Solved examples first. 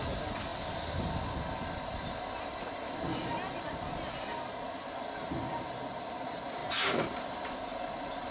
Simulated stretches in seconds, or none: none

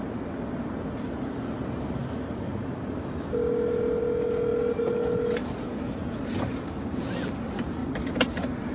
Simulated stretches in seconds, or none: none

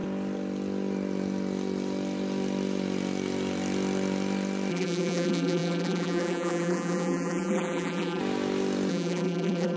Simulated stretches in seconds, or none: 4.7-8.2 (vocoder, BigVGAN v2); 8.9-9.8

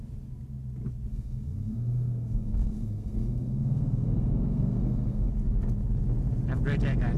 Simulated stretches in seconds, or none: 1.1-5.3 (codec, SNAC)

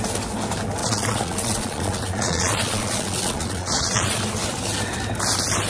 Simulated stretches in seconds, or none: 0.8-4.2 (vocoder, Vocos)

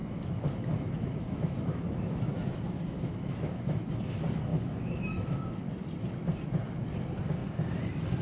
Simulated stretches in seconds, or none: 0.0-3.9 (autoencoder, DAC-VAE); 4.5-5.5

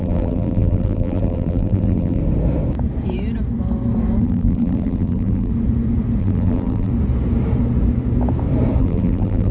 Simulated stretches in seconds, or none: 0.0-2.2 (vocoder, BigVGAN v2); 4.2-5.5; 6.2-6.9; 8.8-9.5

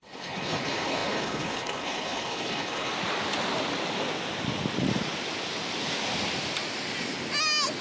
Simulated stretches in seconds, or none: 0.0-2.9 (codec, HILCodec)